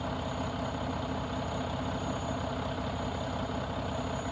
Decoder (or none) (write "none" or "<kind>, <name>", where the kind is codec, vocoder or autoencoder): none